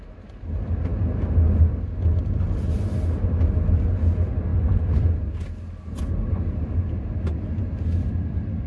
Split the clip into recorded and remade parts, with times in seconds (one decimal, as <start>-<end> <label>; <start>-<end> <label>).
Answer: 0.0-8.7 recorded